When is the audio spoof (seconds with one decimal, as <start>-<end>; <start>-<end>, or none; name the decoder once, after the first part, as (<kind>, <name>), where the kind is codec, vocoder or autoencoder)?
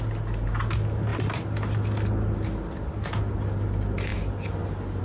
none